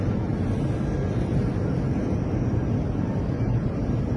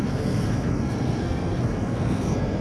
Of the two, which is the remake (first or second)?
second